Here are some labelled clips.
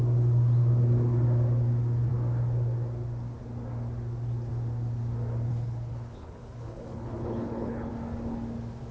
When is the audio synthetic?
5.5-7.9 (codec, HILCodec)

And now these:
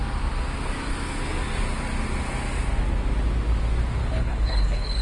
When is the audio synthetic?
4.0-5.0 (codec, HILCodec)

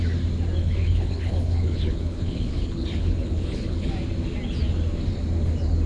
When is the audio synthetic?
0.6-3.9 (codec, HILCodec)

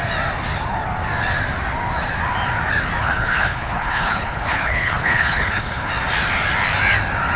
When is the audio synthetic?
3.0-5.9 (codec, HILCodec)

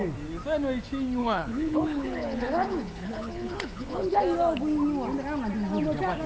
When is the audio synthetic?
1.2-4.2 (codec, HILCodec)

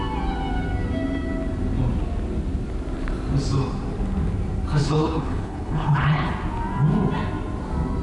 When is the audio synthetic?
4.8-6.3 (codec, HILCodec)

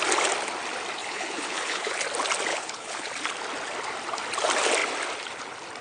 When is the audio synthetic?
1.0-2.0 (codec, HILCodec); 2.5-3.1